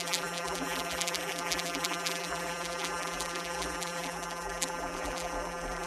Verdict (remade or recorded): remade